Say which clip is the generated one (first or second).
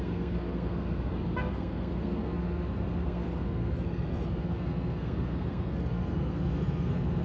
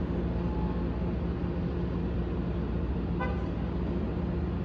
first